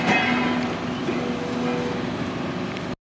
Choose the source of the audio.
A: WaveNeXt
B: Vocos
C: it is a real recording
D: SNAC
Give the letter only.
C